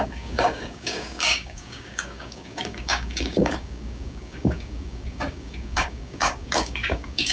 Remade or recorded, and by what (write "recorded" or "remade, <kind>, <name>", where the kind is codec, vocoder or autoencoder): remade, codec, DAC